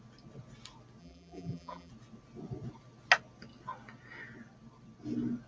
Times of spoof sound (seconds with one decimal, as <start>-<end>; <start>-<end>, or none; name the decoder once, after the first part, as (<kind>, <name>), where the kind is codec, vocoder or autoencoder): 1.0-1.9 (vocoder, BigVGAN v2)